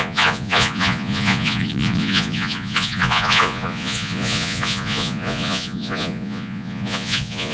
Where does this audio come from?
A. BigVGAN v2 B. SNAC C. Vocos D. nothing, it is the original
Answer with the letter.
C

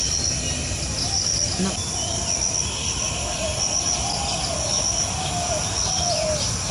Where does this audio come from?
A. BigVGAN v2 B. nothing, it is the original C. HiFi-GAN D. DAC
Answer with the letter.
B